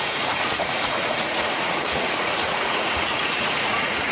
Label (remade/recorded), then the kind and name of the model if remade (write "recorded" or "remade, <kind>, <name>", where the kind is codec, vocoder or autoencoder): remade, vocoder, Vocos